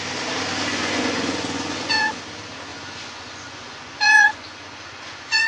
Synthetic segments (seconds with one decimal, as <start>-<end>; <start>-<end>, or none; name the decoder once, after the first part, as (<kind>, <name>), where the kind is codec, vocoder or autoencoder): 0.7-2.2 (vocoder, Vocos); 2.7-5.5